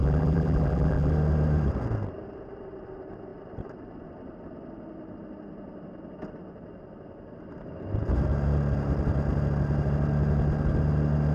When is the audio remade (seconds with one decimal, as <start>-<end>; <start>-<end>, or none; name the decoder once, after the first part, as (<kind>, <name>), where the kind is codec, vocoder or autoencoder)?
0.0-1.1 (vocoder, BigVGAN v2)